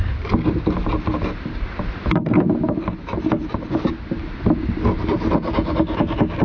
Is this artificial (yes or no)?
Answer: no